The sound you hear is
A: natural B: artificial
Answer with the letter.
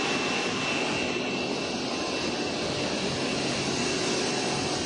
A